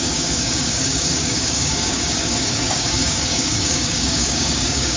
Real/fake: fake